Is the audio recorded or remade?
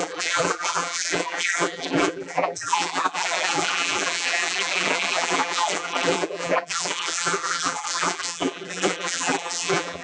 remade